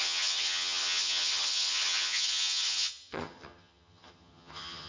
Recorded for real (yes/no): no